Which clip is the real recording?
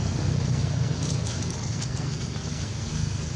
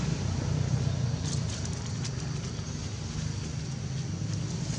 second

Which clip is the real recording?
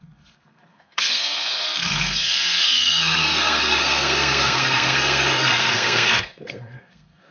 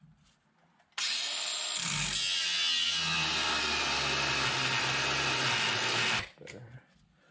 second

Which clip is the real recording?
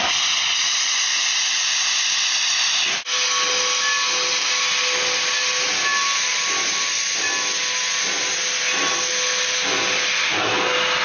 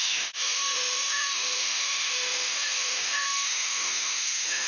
first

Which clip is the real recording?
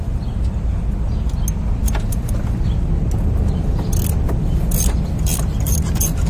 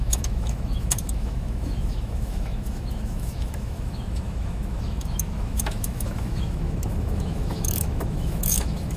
first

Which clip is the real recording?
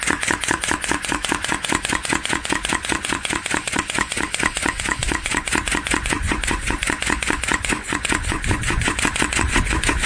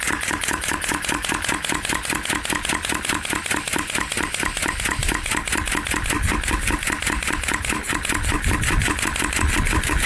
second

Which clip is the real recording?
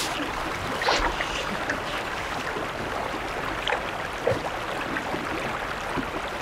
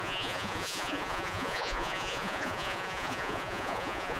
first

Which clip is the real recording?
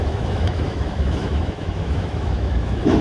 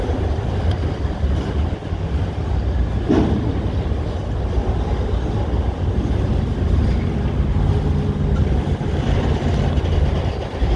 second